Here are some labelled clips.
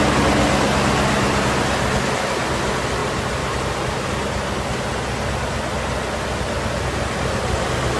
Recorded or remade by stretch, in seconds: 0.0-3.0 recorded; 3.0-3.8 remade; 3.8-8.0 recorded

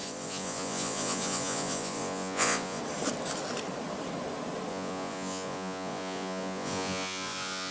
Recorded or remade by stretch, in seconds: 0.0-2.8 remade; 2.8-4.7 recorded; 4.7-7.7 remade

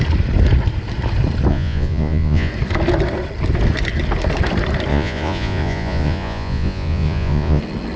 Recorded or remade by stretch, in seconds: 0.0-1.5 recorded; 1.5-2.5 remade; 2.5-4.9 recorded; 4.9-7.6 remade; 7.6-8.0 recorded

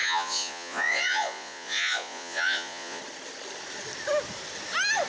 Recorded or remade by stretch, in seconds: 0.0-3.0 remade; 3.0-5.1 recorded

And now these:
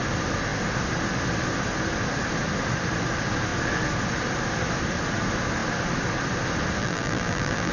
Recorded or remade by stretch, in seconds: 0.0-6.8 recorded; 6.8-7.7 remade

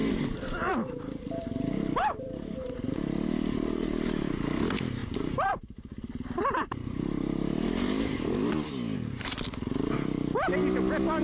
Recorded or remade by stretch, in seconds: 0.0-4.3 remade; 4.3-5.0 recorded; 5.0-8.5 remade; 8.5-11.2 recorded